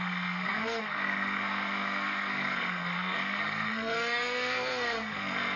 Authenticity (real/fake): fake